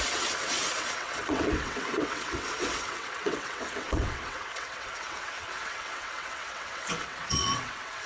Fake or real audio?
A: fake